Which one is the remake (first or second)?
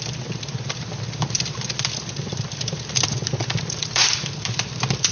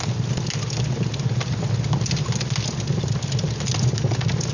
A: first